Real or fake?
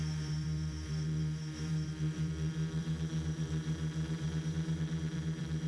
fake